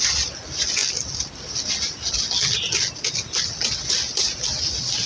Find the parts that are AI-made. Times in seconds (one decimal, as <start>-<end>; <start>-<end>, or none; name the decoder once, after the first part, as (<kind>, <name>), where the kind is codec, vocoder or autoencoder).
none